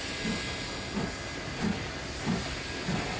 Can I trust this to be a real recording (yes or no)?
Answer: yes